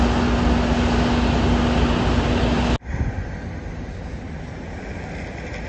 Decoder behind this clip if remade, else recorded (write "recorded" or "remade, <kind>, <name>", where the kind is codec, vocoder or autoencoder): recorded